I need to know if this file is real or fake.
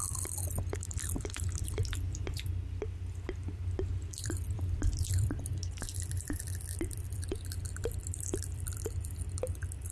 fake